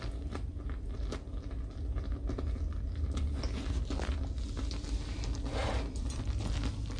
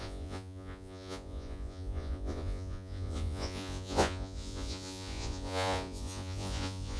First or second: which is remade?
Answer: second